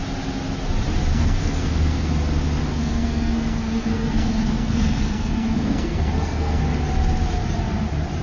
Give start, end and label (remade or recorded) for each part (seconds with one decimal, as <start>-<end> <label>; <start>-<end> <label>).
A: 0.0-1.1 recorded; 1.1-2.1 remade; 2.1-2.7 recorded; 2.7-6.6 remade; 6.6-8.2 recorded